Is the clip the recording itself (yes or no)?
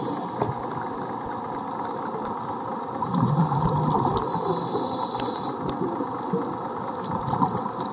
yes